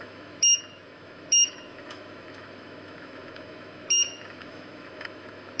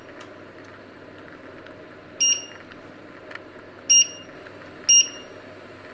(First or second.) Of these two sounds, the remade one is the first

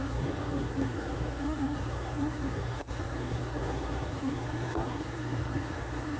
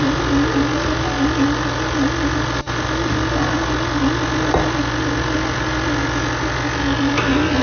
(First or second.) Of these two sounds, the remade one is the first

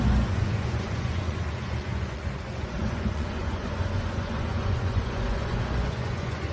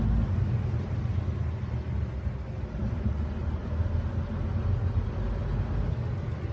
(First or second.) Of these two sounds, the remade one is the first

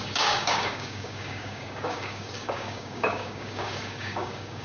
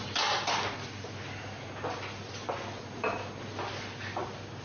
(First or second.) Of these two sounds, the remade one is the first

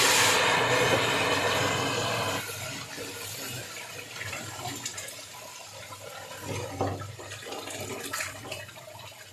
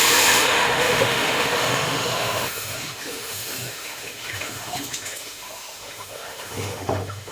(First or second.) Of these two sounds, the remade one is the second